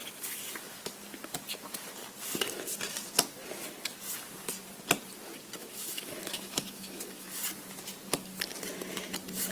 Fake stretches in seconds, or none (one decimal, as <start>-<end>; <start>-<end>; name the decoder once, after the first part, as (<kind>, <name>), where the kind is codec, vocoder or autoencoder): 5.6-7.4 (autoencoder, DAC-VAE)